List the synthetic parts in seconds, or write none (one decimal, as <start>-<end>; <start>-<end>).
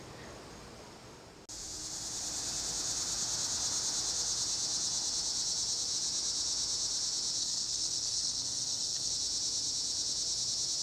7.4-9.1